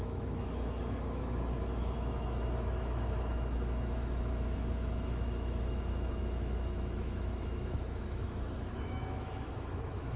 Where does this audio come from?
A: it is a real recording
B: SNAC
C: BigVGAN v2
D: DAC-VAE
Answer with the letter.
D